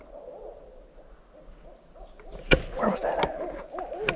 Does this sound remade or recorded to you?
recorded